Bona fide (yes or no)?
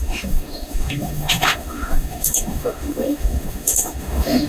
no